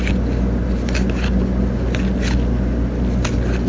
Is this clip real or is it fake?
real